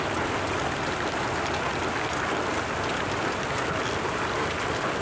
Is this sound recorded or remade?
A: recorded